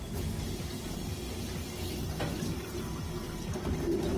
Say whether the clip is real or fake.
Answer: real